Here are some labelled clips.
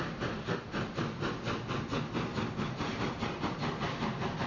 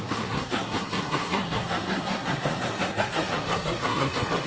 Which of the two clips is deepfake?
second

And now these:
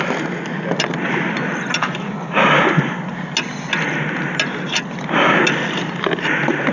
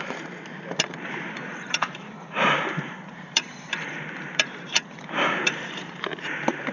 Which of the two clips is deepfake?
second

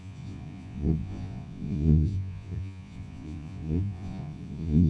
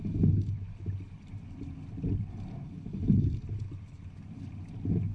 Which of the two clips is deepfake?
first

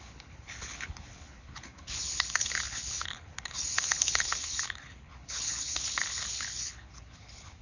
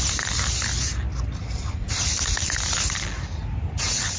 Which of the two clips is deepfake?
first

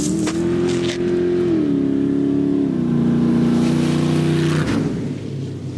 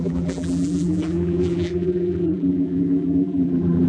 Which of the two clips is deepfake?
second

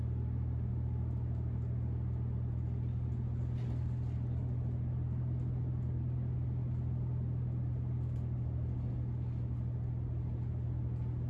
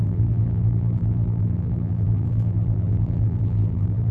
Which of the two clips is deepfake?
second